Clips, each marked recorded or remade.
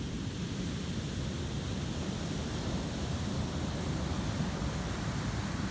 recorded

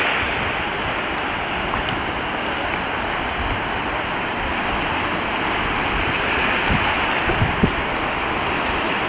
recorded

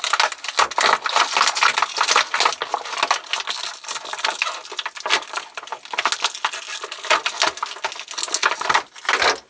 recorded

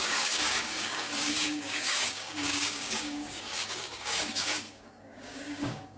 remade